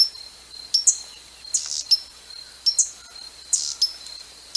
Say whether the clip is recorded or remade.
recorded